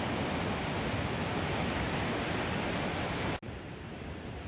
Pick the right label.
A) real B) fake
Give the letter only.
A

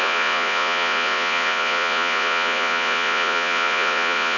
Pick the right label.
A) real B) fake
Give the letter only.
B